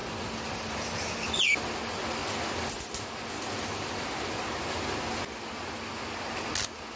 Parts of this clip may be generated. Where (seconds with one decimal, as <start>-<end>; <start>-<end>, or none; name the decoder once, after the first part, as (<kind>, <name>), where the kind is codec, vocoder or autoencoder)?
0.0-1.6 (vocoder, BigVGAN v2)